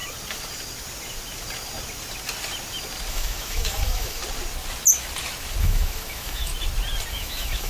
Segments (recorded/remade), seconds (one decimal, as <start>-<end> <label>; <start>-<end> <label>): 0.0-3.1 recorded; 3.1-4.2 remade; 4.2-5.6 recorded; 5.6-6.5 remade; 6.5-7.1 recorded; 7.1-7.7 remade